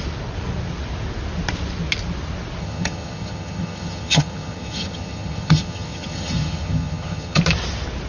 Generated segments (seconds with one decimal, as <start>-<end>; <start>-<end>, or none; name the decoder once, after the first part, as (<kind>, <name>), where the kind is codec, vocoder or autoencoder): 2.6-7.4 (vocoder, HiFi-GAN)